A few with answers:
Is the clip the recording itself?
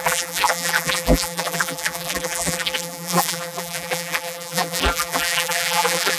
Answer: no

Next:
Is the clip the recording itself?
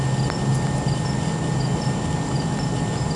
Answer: yes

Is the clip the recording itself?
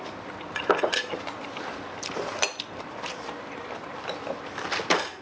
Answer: no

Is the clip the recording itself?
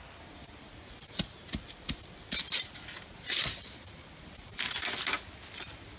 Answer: yes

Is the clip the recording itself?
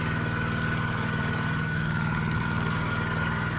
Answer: no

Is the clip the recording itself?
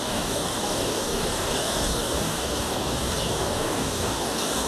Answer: no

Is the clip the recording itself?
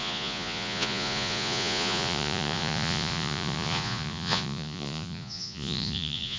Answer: no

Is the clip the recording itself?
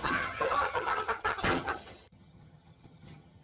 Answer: no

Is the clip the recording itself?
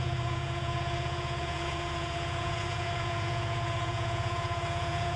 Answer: no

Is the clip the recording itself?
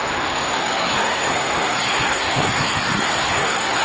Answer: no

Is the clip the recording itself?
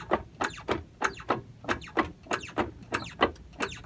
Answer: yes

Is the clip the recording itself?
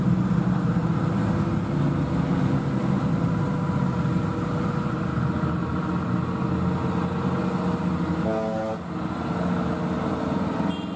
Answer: yes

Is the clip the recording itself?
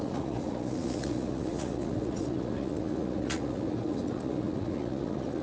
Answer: no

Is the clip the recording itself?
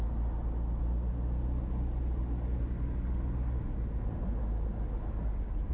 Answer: yes